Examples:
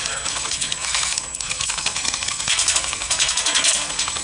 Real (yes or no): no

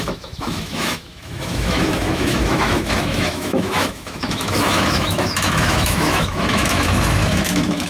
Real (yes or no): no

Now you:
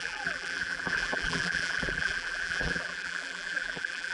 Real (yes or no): no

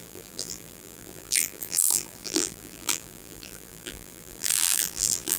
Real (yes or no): no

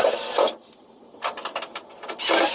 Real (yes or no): yes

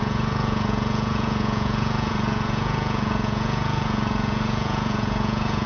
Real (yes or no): no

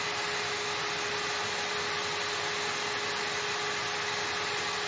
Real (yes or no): yes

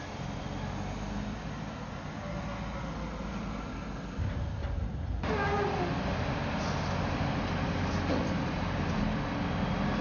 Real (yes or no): yes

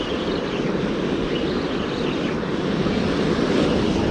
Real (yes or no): yes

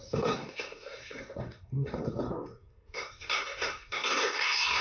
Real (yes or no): no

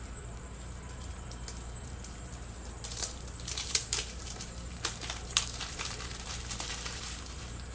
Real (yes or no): no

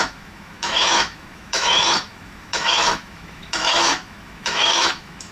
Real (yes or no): no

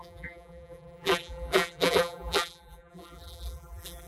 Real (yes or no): no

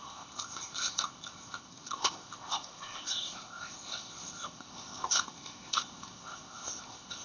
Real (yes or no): no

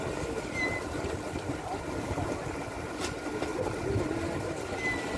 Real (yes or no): yes